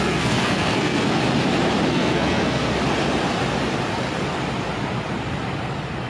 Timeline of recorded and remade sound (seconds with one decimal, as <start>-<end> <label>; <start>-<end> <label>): 0.0-1.2 remade; 1.2-1.9 recorded; 1.9-2.7 remade; 2.7-6.1 recorded